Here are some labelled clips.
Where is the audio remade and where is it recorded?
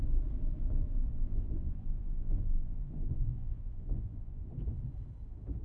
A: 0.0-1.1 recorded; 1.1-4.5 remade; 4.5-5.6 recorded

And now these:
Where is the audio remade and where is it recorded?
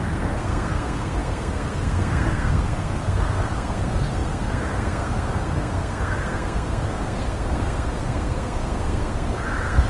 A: 0.0-9.9 remade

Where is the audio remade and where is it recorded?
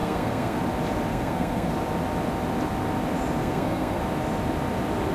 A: 0.0-0.6 remade; 0.6-1.1 recorded; 1.1-1.7 remade; 1.7-3.4 recorded; 3.4-4.0 remade; 4.0-5.1 recorded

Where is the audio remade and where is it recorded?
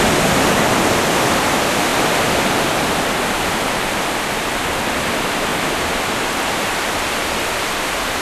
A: 0.0-5.5 recorded; 5.5-7.5 remade; 7.5-8.2 recorded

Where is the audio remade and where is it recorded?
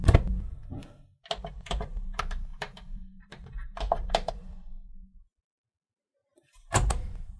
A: 0.0-0.6 remade; 0.6-1.5 recorded; 1.5-7.4 remade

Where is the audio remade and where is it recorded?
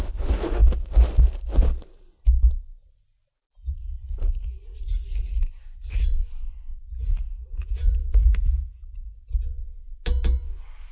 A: 0.0-7.4 recorded; 7.4-9.2 remade; 9.2-10.9 recorded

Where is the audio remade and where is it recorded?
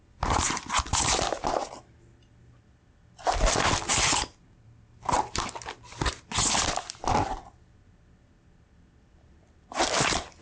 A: 0.0-0.9 recorded; 0.9-1.9 remade; 1.9-10.4 recorded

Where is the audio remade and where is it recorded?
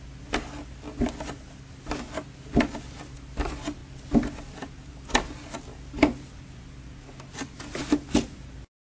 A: 0.0-8.9 recorded